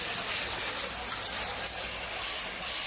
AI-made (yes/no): no